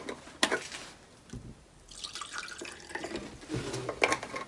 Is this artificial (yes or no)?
no